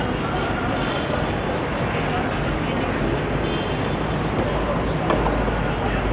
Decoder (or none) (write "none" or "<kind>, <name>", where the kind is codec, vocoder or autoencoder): none